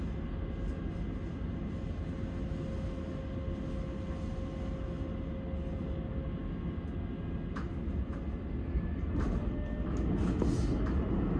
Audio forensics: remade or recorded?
recorded